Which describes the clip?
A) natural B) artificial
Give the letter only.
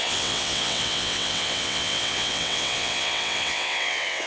B